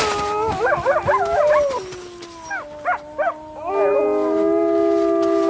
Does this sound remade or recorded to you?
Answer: recorded